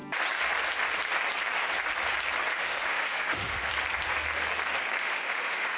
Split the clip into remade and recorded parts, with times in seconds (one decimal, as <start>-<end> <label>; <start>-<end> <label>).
0.0-2.6 recorded; 2.6-3.7 remade; 3.7-5.0 recorded; 5.0-5.8 remade